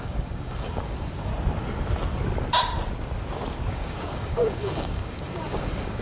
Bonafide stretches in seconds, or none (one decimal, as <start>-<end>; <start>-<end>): 1.3-3.7